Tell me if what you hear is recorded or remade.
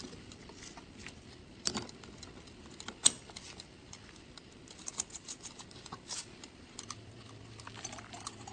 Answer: recorded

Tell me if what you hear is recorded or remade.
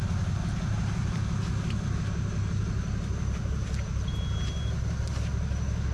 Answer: recorded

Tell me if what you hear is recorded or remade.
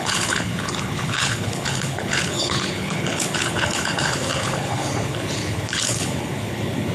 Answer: remade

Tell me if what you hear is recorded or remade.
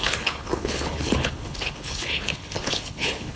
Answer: remade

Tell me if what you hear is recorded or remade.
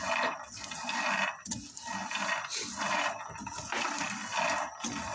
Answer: recorded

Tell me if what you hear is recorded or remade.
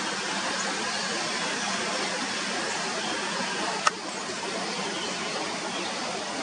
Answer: recorded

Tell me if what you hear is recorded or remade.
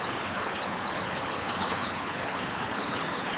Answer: remade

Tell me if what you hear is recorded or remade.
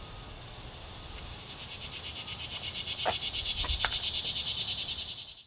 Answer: recorded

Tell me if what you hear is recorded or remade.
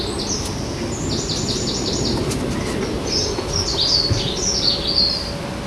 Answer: recorded